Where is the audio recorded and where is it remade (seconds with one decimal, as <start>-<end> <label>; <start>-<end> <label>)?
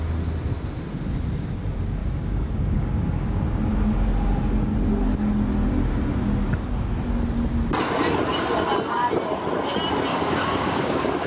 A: 0.0-2.0 recorded; 2.0-3.4 remade; 3.4-10.1 recorded; 10.1-11.3 remade